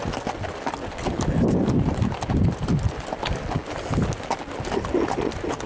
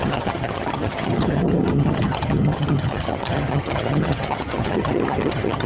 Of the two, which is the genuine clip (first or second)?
first